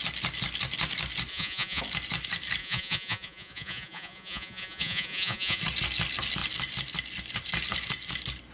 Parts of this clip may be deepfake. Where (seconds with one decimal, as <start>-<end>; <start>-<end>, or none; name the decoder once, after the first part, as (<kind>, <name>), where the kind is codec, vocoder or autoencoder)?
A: 1.3-1.8 (vocoder, Vocos); 2.6-5.6